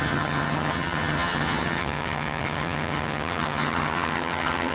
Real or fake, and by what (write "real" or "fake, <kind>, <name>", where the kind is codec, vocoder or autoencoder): fake, vocoder, HiFi-GAN